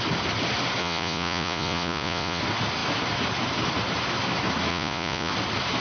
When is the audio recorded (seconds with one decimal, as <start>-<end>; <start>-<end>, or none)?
0.0-0.8; 2.4-4.7; 5.3-5.8

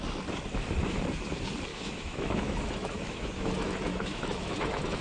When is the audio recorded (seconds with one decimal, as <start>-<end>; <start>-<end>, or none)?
0.0-1.7

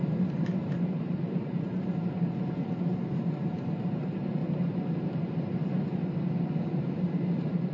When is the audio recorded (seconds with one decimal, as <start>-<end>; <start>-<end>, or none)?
4.4-6.6

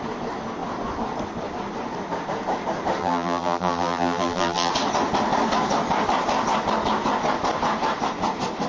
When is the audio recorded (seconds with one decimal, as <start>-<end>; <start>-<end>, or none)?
0.0-3.0; 4.7-8.7

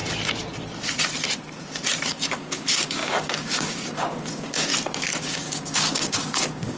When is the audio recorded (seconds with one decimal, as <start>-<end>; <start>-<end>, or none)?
0.0-2.1; 4.7-5.2